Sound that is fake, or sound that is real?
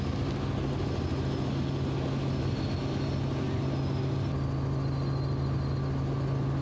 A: real